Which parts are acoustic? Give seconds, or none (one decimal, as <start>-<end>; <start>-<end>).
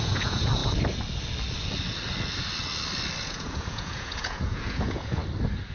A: 0.6-3.2; 5.2-5.7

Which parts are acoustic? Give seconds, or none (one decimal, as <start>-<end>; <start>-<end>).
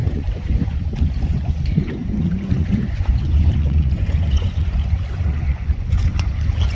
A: none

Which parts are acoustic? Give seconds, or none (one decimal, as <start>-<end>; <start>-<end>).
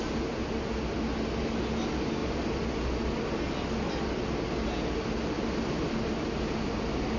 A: 0.0-7.2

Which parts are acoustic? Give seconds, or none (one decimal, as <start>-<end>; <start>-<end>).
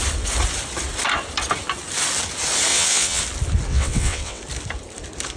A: 0.0-2.7; 3.2-3.7; 4.4-5.4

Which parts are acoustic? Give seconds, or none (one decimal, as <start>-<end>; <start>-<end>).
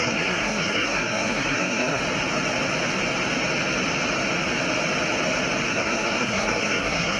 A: 2.0-5.7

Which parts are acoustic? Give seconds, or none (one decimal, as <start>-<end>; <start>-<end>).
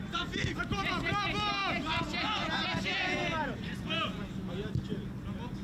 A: 0.0-5.6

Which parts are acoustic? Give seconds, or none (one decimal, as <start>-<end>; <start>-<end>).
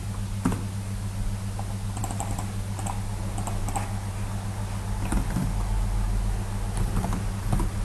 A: 0.0-7.8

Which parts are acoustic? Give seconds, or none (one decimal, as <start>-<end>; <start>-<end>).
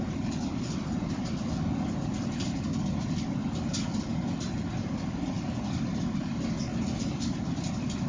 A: 0.0-8.1